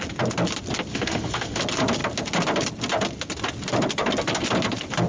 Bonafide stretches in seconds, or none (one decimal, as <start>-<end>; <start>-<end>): 0.0-0.9; 1.6-5.1